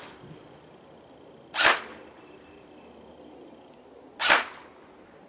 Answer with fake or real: real